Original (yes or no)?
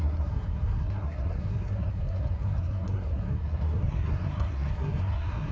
no